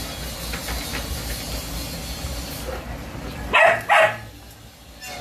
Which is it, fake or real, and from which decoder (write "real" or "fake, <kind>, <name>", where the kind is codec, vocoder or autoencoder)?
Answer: real